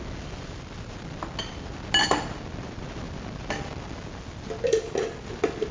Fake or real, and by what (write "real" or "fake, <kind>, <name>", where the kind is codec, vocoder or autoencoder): real